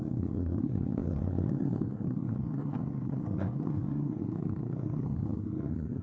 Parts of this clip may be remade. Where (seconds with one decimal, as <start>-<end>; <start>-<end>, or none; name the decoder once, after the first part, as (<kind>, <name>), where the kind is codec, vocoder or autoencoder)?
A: 0.0-6.0 (codec, SNAC)